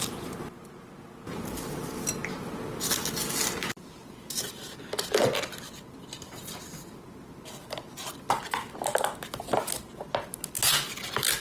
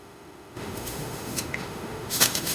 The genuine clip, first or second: first